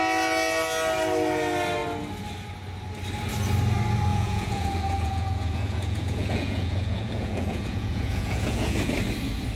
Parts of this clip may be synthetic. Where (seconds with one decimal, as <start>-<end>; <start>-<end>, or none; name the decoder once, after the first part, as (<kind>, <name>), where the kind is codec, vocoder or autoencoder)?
4.1-8.9 (vocoder, Vocos)